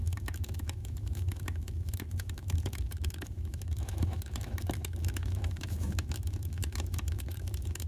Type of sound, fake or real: fake